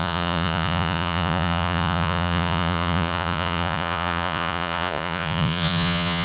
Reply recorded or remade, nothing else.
remade